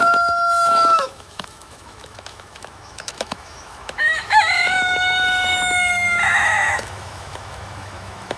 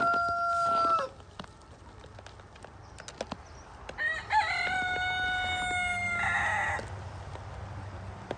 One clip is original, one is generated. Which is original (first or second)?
second